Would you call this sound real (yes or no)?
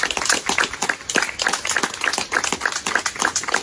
yes